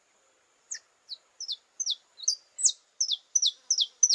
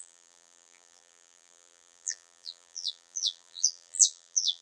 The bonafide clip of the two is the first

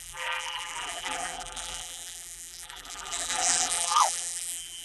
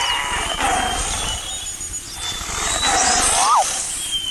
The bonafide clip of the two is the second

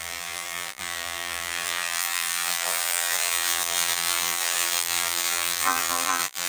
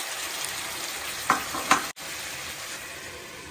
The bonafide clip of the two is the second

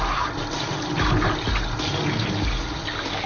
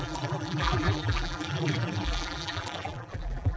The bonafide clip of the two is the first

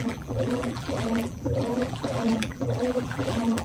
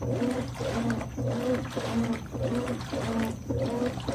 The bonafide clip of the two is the second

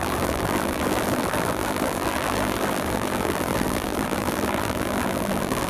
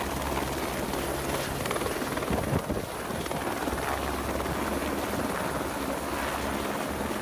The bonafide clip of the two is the second